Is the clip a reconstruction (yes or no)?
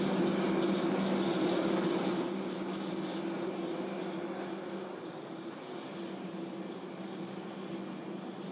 no